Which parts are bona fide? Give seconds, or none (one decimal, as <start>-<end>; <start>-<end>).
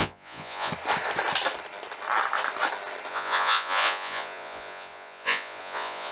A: 0.7-3.1